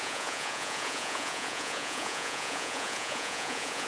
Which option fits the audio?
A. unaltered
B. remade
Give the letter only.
B